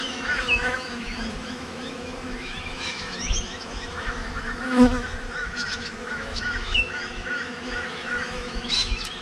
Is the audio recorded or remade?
remade